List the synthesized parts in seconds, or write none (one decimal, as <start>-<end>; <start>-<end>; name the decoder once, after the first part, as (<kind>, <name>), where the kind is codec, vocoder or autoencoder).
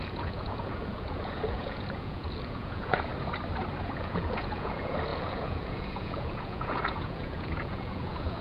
0.0-3.1 (vocoder, Vocos); 3.8-8.4